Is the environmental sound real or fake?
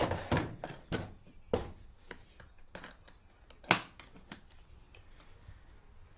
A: real